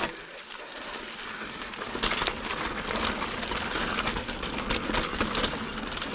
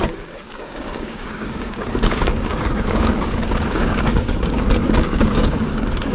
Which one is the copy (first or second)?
second